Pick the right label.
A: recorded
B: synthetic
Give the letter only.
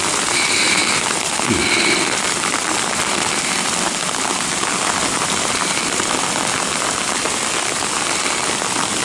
A